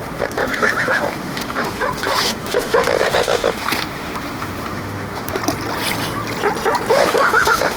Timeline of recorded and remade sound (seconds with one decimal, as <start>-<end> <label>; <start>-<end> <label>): 0.0-5.4 remade; 5.4-6.9 recorded; 6.9-7.8 remade